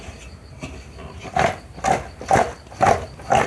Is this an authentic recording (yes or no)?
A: yes